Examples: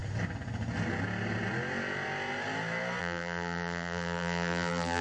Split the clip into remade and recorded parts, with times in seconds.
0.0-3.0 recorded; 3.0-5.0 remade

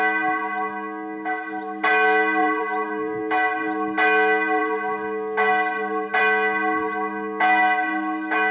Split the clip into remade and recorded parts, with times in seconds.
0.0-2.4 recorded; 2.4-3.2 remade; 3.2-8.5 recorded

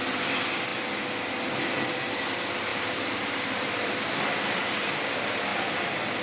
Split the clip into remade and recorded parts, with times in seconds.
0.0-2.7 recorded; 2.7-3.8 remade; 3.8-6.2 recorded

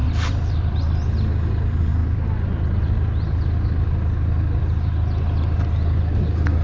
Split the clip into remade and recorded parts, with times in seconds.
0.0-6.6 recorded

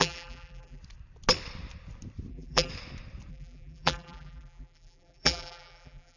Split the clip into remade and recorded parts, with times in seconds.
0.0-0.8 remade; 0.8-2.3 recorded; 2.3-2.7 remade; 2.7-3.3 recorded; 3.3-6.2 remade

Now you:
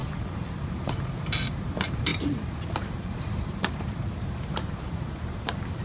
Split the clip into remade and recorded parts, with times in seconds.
0.0-0.5 recorded; 0.5-5.8 remade